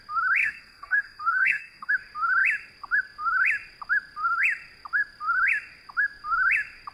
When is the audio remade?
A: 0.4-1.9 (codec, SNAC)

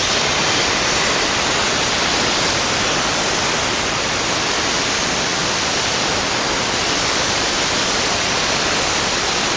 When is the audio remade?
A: none

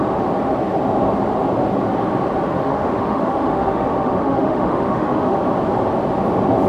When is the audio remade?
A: 2.5-5.4 (autoencoder, DAC-VAE)

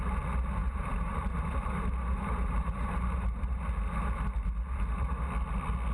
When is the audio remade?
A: 0.6-3.6 (vocoder, BigVGAN v2)

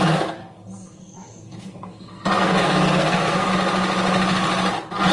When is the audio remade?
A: 0.4-3.5 (codec, SNAC)

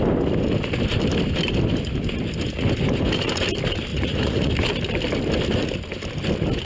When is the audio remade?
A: 3.9-4.5 (vocoder, Vocos)

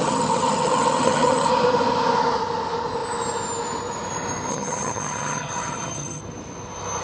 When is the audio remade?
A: 0.0-1.5 (vocoder, HiFi-GAN); 4.5-6.2